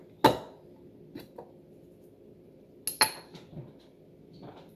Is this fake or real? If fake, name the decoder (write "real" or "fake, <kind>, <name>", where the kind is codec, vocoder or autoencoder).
real